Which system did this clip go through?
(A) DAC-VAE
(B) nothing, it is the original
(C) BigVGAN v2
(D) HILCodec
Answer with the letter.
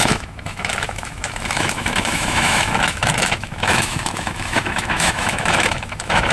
A